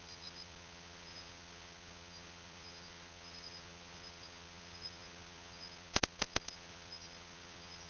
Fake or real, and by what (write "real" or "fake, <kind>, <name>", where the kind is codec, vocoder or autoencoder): fake, vocoder, Vocos